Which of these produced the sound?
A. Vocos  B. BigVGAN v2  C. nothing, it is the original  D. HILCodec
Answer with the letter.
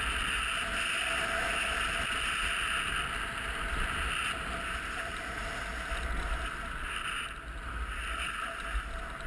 C